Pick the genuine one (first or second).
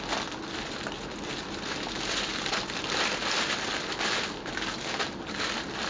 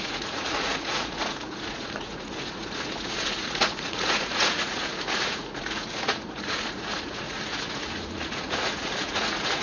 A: first